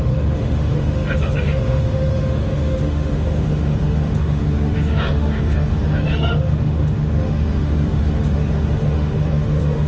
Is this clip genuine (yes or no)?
no